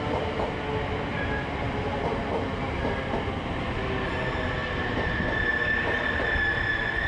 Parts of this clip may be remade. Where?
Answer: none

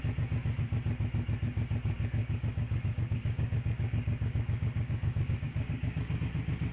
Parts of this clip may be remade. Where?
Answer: 2.2-6.2 (codec, DAC)

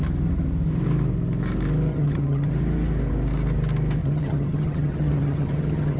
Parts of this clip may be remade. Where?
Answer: 1.9-2.5 (vocoder, HiFi-GAN); 4.0-6.0